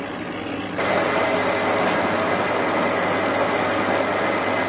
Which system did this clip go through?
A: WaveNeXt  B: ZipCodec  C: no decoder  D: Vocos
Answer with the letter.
C